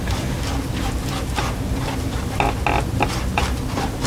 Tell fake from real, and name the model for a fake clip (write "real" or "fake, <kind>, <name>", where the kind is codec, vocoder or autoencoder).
real